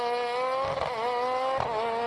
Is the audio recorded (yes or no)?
yes